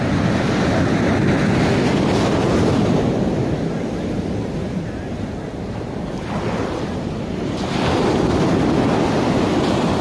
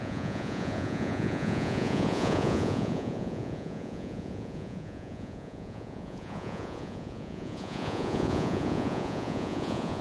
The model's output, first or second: second